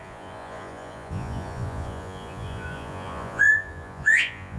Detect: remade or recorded remade